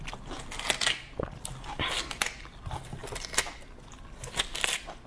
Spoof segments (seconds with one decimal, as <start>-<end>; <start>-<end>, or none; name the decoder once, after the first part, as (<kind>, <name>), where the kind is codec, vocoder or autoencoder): none